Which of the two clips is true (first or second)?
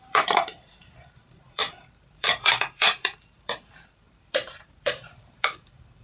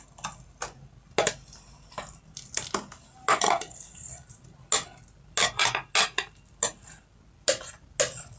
second